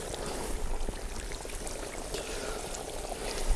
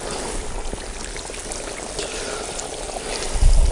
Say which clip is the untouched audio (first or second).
second